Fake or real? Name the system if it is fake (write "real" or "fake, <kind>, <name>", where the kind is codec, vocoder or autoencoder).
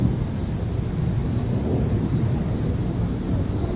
real